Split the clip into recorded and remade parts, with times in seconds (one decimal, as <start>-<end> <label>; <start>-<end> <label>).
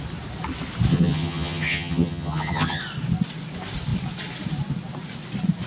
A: 0.0-0.9 recorded; 0.9-2.8 remade; 2.8-5.7 recorded